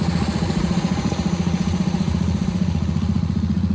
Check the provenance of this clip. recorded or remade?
remade